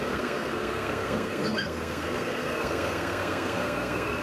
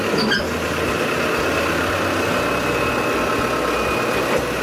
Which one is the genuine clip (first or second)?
second